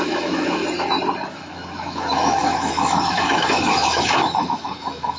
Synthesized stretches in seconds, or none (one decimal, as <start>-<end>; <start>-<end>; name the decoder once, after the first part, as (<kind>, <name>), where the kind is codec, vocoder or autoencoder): 0.0-0.6 (autoencoder, DAC-VAE); 1.3-5.2